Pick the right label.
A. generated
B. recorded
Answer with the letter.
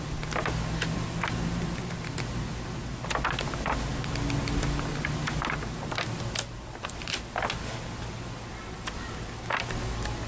B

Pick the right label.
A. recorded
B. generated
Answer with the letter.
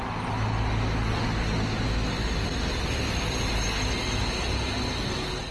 A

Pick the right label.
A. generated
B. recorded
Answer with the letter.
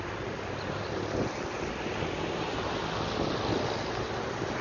B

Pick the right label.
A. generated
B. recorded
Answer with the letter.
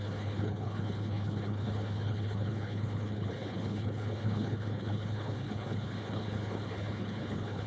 A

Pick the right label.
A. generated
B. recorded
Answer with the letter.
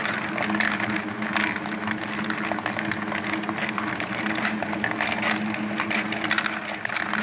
B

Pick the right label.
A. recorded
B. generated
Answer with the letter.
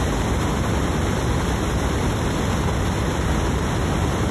A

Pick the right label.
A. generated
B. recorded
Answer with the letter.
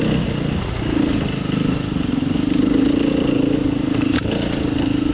B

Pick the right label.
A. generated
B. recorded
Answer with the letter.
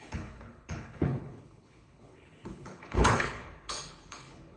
A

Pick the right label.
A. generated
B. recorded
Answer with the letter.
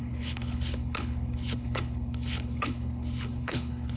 A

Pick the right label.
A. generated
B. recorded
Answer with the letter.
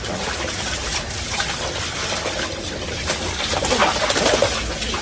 B